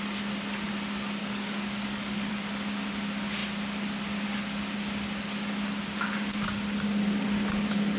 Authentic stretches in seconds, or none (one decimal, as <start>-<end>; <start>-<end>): 0.0-1.2; 2.3-8.0